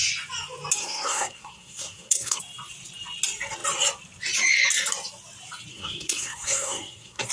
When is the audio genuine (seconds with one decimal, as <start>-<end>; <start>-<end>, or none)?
0.0-0.8; 2.4-5.7